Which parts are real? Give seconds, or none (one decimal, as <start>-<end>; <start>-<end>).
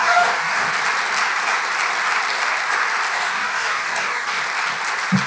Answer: 0.7-3.1; 4.4-5.3